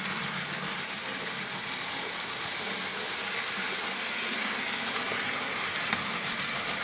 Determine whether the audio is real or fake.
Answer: real